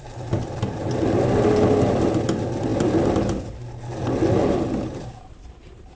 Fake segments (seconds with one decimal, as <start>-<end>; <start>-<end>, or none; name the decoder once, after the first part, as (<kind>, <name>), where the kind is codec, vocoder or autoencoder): none